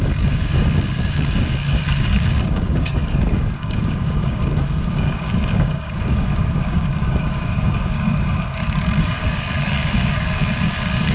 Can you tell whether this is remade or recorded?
remade